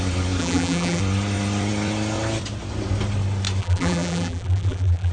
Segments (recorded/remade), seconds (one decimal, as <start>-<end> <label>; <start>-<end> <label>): 0.0-0.4 recorded; 0.4-1.0 remade; 1.0-3.6 recorded; 3.6-5.1 remade